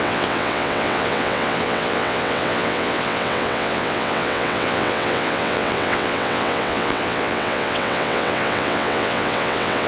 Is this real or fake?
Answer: fake